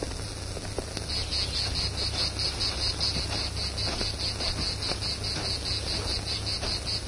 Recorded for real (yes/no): yes